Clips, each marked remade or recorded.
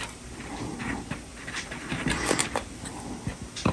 remade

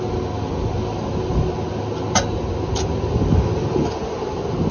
recorded